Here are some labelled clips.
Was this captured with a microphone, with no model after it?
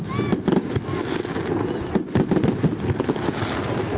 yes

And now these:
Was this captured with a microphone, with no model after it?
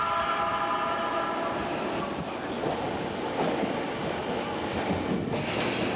yes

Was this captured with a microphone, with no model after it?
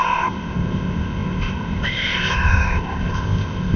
no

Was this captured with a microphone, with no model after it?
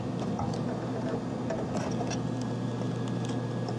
yes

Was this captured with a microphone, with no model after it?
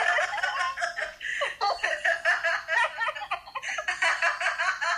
yes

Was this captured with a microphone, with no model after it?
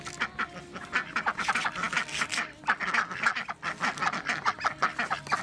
yes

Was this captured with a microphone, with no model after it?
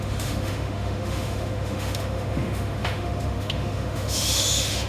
no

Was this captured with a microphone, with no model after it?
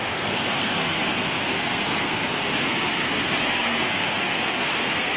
no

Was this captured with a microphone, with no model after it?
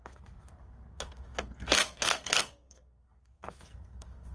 no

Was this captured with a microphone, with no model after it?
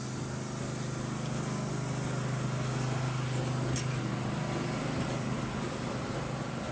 yes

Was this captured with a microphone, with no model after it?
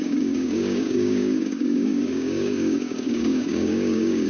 no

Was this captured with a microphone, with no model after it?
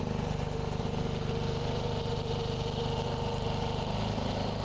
no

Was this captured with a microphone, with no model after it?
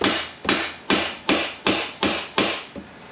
yes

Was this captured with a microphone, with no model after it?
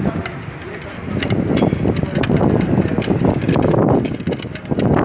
yes